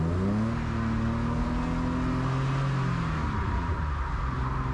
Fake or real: real